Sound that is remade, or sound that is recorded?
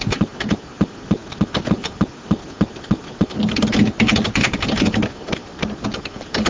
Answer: recorded